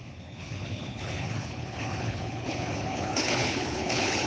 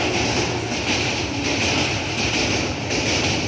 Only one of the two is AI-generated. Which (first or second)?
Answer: first